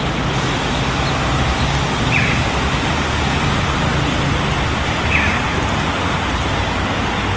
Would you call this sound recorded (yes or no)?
yes